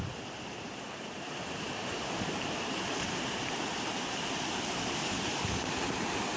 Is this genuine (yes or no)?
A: no